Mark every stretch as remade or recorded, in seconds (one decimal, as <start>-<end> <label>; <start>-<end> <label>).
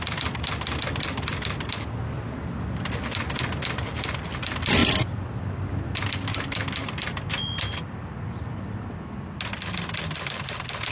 0.0-10.9 recorded